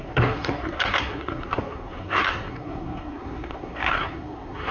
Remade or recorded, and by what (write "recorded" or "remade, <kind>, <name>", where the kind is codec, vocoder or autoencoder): remade, codec, SNAC